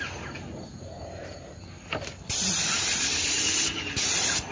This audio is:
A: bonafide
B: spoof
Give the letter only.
A